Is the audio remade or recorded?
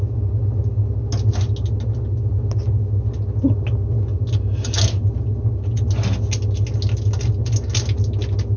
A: recorded